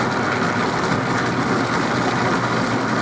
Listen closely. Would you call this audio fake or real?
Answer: real